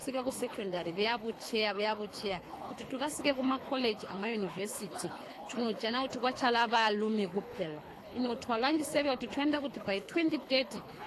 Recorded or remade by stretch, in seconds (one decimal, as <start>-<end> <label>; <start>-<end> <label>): 0.0-11.1 remade